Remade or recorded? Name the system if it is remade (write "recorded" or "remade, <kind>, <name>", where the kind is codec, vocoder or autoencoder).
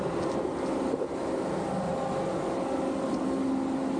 recorded